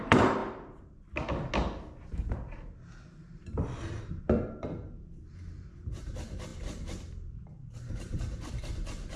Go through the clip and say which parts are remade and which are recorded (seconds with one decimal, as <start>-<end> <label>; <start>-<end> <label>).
0.0-0.4 remade; 0.4-4.2 recorded; 4.2-9.2 remade